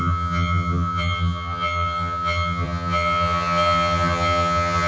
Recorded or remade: remade